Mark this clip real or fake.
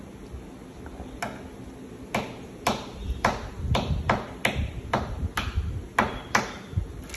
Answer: real